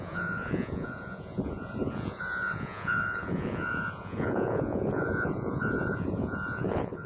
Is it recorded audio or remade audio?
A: remade